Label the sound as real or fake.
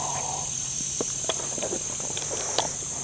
fake